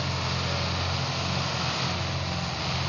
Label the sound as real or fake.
real